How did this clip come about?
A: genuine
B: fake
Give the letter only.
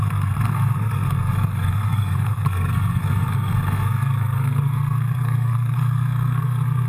B